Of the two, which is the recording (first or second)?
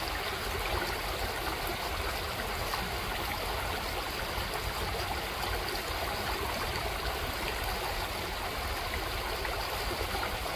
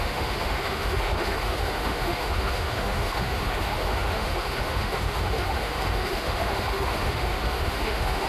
first